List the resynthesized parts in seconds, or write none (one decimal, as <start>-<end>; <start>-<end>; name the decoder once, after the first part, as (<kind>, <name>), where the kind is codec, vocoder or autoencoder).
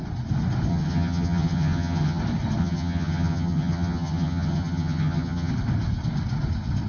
0.7-2.2 (vocoder, HiFi-GAN); 2.6-5.5